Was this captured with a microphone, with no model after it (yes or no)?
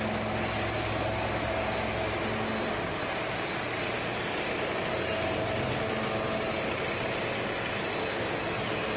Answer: yes